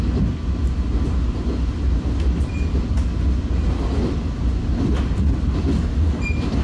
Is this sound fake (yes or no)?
no